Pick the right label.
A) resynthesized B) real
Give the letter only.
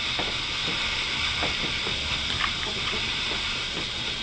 B